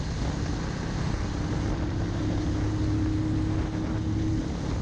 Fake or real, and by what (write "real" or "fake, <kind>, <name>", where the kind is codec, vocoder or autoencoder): real